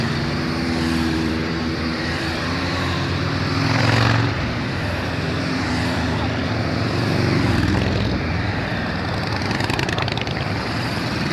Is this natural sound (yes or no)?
no